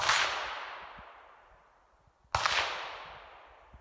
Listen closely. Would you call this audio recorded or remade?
recorded